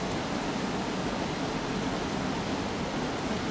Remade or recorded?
recorded